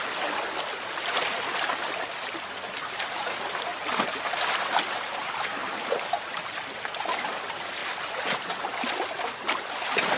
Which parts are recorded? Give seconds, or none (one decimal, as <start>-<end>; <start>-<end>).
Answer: 0.0-10.2